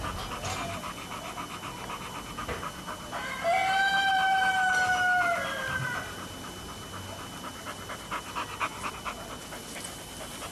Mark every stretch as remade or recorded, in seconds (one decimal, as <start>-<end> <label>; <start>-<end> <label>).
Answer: 0.0-10.5 recorded

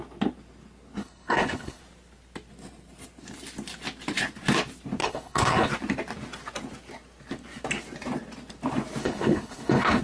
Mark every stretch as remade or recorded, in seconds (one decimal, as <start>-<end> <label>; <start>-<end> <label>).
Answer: 0.0-1.0 recorded; 1.0-1.8 remade; 1.8-5.0 recorded; 5.0-5.7 remade; 5.7-9.0 recorded; 9.0-10.0 remade

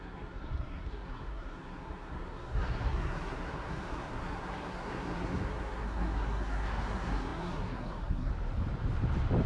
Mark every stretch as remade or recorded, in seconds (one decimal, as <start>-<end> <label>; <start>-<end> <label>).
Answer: 0.0-8.3 remade; 8.3-9.5 recorded

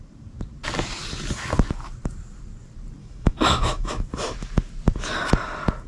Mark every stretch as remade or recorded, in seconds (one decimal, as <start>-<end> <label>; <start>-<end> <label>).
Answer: 0.0-3.0 recorded; 3.0-3.9 remade; 3.9-5.9 recorded

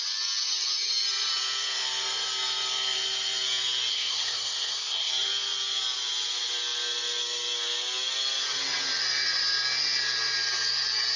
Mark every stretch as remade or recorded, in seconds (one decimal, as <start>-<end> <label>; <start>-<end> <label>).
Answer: 0.0-3.9 recorded; 3.9-5.1 remade; 5.1-11.2 recorded

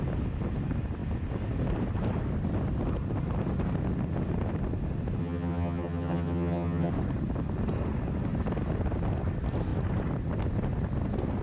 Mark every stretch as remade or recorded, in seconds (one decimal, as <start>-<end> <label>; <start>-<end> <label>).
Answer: 0.0-5.2 recorded; 5.2-6.9 remade; 6.9-11.4 recorded

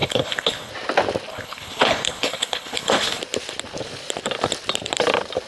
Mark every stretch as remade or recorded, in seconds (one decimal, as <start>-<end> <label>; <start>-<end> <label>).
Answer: 0.0-0.7 remade; 0.7-1.3 recorded; 1.3-3.2 remade; 3.2-5.5 recorded

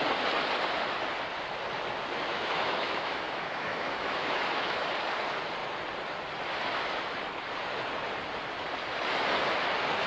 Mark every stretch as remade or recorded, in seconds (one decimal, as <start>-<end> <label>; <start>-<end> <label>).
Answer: 0.0-2.3 recorded; 2.3-4.9 remade; 4.9-10.1 recorded